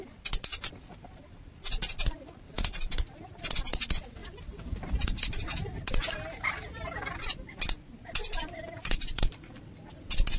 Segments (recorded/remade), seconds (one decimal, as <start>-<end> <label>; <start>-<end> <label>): 0.0-0.5 recorded; 0.5-3.5 remade; 3.5-4.2 recorded; 4.2-7.6 remade; 7.6-8.2 recorded; 8.2-9.2 remade; 9.2-10.4 recorded